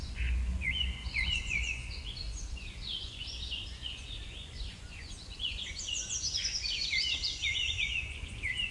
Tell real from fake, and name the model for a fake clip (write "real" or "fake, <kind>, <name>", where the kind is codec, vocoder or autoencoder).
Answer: fake, vocoder, Vocos